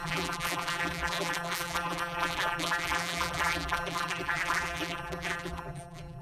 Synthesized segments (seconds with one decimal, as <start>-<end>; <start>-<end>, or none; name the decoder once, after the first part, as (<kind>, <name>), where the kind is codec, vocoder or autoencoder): 0.0-6.2 (vocoder, BigVGAN v2)